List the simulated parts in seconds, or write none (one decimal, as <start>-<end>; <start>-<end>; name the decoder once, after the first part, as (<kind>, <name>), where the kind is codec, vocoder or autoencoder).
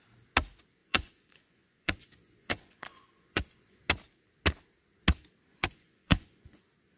0.8-3.8 (vocoder, Vocos); 5.5-6.6